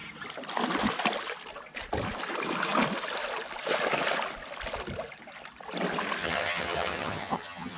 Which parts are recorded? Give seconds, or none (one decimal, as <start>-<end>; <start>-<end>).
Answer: 0.0-6.2